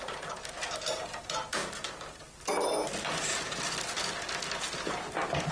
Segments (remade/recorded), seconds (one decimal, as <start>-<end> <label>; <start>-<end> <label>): 0.0-5.5 recorded